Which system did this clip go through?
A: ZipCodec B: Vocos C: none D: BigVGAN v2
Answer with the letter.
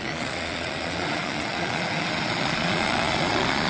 B